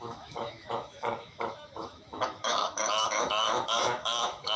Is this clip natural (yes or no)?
no